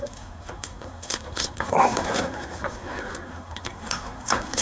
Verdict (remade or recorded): remade